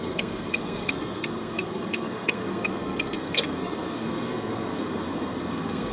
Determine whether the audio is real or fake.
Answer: fake